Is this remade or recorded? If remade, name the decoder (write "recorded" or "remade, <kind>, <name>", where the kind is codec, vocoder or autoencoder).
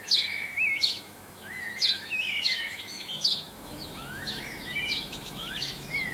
remade, autoencoder, DAC-VAE